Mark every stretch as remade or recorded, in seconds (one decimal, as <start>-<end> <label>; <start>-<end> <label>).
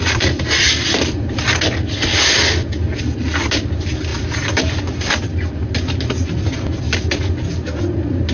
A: 0.0-4.1 recorded; 4.1-4.8 remade; 4.8-8.3 recorded